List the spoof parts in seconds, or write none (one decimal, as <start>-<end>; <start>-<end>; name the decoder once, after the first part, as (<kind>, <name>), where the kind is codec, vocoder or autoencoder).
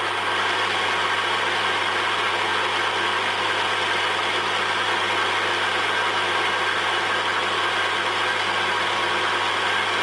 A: none